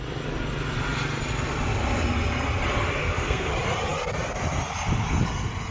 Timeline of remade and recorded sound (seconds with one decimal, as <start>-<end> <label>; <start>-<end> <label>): 0.0-3.0 recorded; 3.0-3.5 remade; 3.5-5.7 recorded